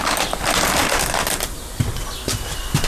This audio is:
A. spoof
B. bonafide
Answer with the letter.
B